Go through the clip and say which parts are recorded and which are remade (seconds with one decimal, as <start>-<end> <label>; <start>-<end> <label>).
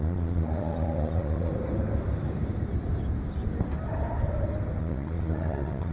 0.0-1.5 remade; 1.5-4.8 recorded; 4.8-5.9 remade